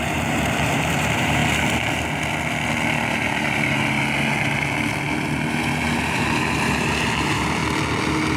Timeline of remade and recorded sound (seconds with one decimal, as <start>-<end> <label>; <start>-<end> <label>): 0.0-1.4 remade; 1.4-6.0 recorded; 6.0-7.6 remade; 7.6-8.4 recorded